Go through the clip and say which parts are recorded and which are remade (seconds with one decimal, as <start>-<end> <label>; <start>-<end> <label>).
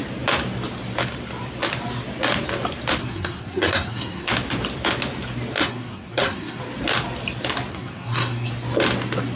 0.0-3.0 recorded; 3.0-4.3 remade; 4.3-5.6 recorded; 5.6-6.6 remade; 6.6-7.7 recorded; 7.7-8.5 remade; 8.5-9.4 recorded